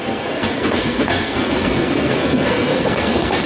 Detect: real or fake fake